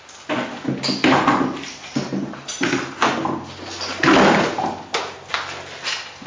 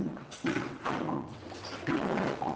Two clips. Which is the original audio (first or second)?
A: first